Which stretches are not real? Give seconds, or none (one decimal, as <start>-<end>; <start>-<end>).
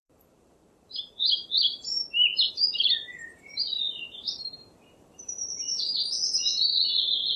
0.0-2.0; 2.5-7.4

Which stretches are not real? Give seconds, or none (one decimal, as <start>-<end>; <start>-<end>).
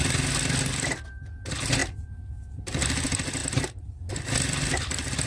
1.8-2.8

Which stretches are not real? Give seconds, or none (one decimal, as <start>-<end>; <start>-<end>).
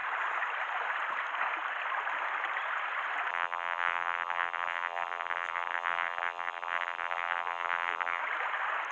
3.3-8.2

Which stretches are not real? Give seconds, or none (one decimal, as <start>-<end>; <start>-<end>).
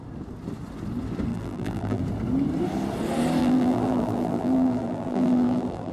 1.3-2.0; 3.4-5.9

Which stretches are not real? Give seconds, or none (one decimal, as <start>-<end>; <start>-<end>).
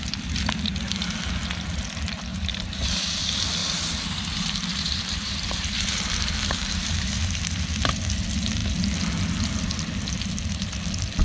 2.3-3.2; 3.6-7.4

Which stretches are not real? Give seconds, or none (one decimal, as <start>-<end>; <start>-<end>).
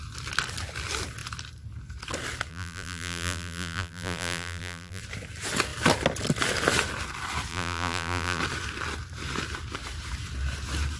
2.5-5.0; 7.5-8.4